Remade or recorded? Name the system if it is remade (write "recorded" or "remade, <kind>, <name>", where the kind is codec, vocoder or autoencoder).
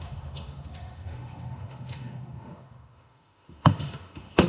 remade, autoencoder, DAC-VAE